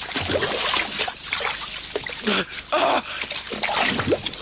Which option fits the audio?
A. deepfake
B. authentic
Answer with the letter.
B